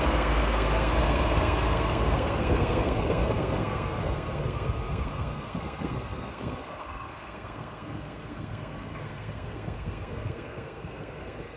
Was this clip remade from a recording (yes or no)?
yes